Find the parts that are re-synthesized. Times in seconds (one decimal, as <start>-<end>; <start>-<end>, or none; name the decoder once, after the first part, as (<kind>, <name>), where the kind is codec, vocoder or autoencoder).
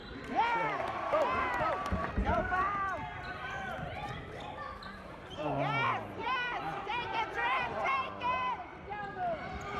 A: 0.0-9.8 (vocoder, BigVGAN v2)